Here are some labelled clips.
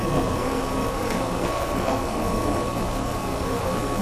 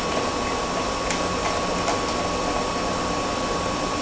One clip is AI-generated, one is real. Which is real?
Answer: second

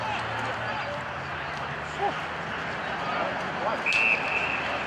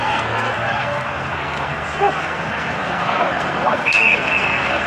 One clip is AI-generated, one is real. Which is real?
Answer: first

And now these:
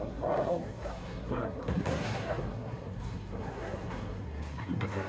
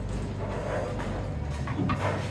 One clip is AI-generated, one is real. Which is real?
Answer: second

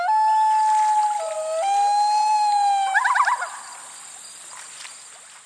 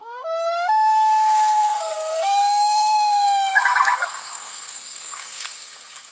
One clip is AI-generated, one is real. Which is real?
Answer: first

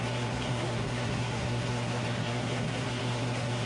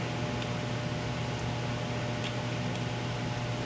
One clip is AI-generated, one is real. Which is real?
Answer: second